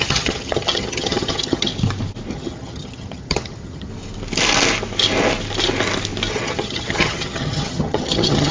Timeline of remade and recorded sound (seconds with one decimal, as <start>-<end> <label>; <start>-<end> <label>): 0.0-1.7 remade; 1.7-2.3 recorded; 2.3-3.9 remade; 3.9-6.3 recorded; 6.3-8.5 remade